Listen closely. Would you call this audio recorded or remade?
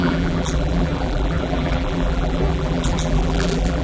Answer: remade